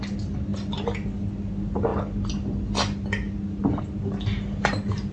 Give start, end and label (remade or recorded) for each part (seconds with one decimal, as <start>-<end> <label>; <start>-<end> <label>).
0.0-5.1 recorded